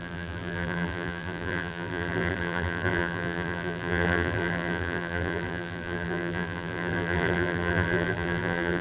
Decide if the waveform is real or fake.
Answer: fake